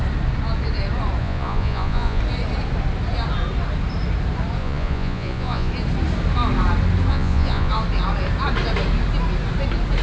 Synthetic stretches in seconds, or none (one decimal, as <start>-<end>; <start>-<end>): 1.2-2.2; 4.6-5.7; 7.1-7.7